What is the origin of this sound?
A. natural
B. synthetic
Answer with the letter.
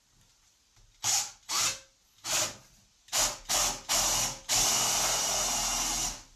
A